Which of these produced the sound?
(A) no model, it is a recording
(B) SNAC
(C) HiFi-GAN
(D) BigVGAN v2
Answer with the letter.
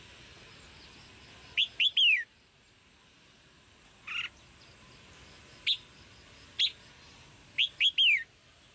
A